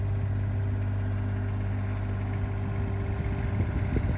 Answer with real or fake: real